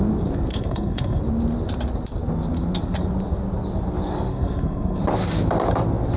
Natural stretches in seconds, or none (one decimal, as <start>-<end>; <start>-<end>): 0.0-0.5; 1.2-4.3; 5.0-6.2